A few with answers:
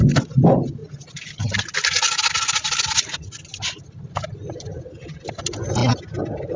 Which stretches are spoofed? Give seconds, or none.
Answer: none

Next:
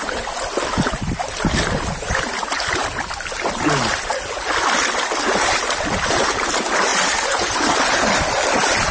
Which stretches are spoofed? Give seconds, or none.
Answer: 6.9-7.6

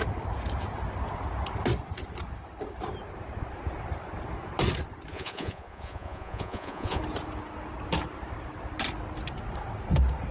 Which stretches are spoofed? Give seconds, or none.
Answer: 5.1-7.0

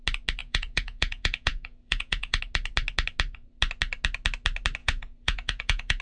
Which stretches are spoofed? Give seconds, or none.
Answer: 0.4-2.4; 4.8-6.0